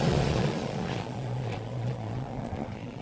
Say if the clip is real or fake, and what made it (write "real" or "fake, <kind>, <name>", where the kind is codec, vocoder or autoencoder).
fake, vocoder, Vocos